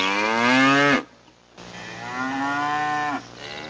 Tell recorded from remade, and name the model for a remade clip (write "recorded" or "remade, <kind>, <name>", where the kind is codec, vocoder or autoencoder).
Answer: recorded